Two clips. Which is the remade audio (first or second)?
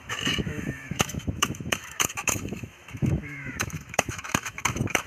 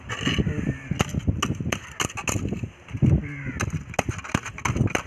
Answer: first